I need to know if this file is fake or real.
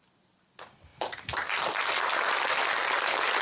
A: real